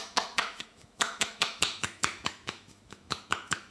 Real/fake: fake